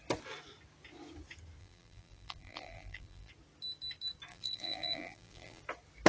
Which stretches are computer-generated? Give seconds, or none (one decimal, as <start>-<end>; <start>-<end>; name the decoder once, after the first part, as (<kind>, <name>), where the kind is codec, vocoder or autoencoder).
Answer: 1.6-3.3 (vocoder, BigVGAN v2); 4.3-5.6